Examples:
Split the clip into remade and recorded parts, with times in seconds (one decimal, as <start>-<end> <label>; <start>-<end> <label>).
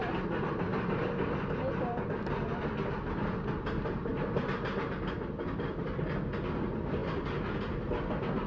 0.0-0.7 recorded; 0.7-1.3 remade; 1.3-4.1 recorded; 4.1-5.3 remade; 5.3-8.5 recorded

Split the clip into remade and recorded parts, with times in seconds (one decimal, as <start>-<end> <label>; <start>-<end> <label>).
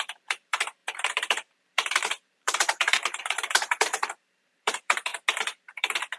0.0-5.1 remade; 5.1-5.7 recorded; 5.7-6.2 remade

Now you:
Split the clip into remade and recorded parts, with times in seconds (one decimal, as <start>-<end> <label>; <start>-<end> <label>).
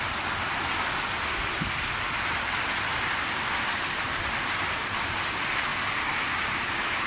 0.0-7.1 remade